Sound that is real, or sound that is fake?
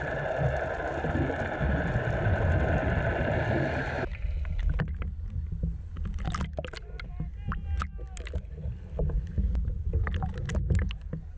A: real